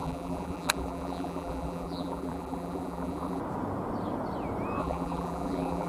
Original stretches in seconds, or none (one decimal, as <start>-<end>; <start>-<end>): 3.4-4.8